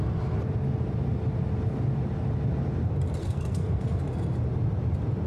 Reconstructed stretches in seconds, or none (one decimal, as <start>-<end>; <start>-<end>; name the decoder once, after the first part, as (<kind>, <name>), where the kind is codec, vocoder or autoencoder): 3.2-4.0 (codec, SNAC)

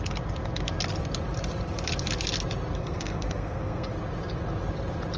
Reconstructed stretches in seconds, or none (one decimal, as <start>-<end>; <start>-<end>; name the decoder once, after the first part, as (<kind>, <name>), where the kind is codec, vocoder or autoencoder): 2.8-3.9 (codec, SNAC)

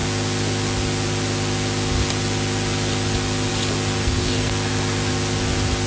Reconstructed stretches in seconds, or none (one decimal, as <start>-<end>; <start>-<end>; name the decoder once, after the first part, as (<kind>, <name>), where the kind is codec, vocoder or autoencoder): 4.0-4.5 (codec, SNAC)